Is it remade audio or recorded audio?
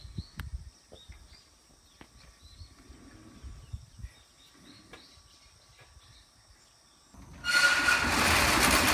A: recorded